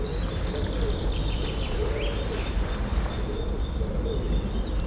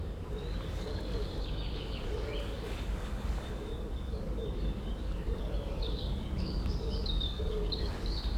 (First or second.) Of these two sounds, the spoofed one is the second